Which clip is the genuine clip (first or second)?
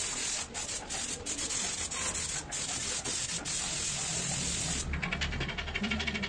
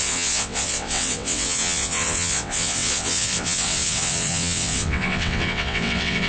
first